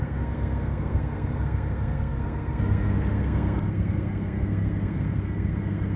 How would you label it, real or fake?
fake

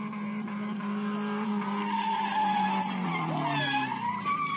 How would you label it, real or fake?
real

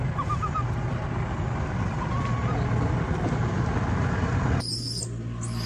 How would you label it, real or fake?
real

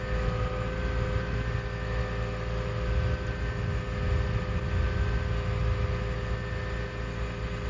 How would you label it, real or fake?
real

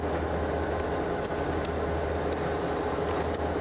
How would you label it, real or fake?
real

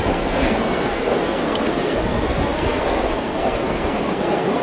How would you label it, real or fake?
fake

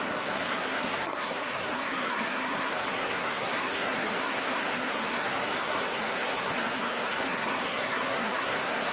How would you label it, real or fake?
fake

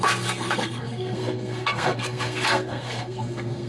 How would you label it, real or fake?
fake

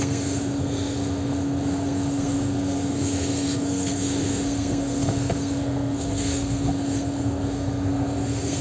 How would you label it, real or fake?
fake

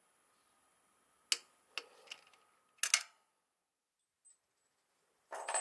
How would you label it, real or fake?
real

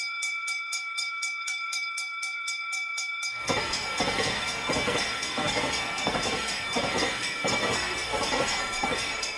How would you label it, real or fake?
fake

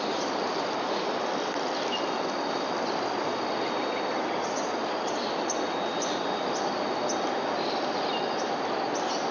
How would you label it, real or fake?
real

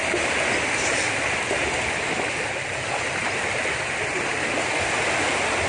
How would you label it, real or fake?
real